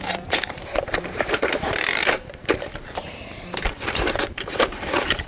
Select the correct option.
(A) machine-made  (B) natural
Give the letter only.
A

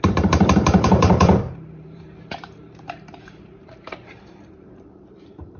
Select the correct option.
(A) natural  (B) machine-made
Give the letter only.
B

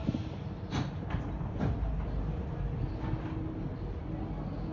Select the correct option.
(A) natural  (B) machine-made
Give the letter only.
A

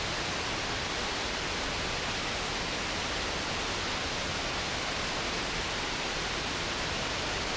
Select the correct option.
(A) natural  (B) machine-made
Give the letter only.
A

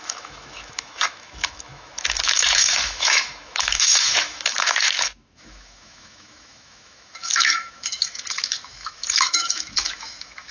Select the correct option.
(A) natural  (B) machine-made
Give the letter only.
B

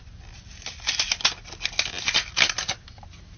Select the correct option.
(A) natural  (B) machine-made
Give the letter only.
A